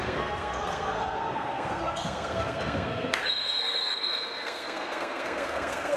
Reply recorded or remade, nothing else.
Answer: remade